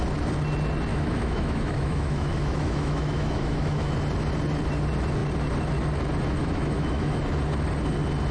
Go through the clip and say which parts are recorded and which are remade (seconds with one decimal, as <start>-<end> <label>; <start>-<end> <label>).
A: 0.0-0.9 recorded; 0.9-3.9 remade; 3.9-6.4 recorded; 6.4-7.2 remade; 7.2-8.3 recorded